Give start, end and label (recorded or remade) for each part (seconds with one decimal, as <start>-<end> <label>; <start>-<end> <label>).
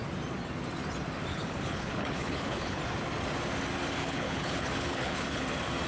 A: 0.0-1.3 recorded; 1.3-2.8 remade; 2.8-4.0 recorded; 4.0-5.4 remade; 5.4-5.9 recorded